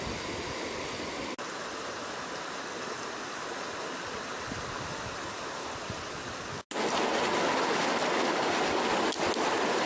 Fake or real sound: real